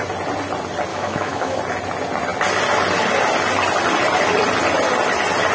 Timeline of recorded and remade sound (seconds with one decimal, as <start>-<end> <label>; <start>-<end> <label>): 0.0-0.9 recorded; 0.9-1.6 remade; 1.6-5.5 recorded